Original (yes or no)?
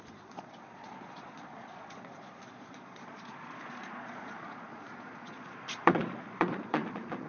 no